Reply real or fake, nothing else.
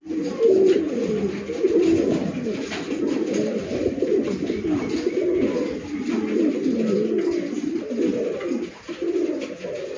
real